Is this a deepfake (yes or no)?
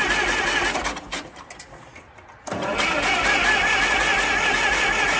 no